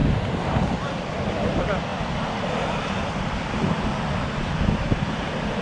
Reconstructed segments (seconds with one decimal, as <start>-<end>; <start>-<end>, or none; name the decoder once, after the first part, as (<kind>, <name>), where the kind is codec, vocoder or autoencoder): 0.0-1.9 (vocoder, BigVGAN v2)